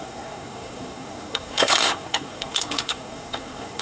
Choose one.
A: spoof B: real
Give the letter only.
A